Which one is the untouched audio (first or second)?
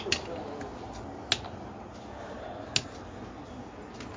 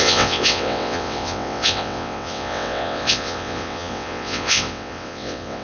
first